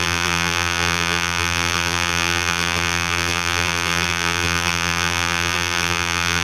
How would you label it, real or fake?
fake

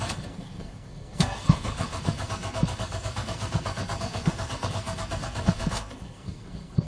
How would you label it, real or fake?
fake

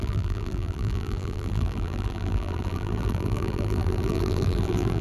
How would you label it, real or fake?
fake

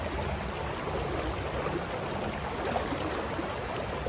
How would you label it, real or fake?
real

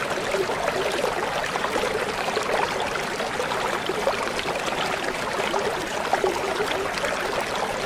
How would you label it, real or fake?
real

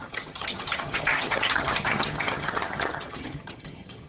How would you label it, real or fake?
fake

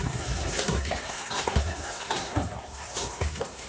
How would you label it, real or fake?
fake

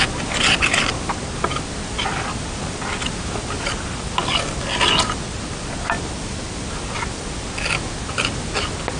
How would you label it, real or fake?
real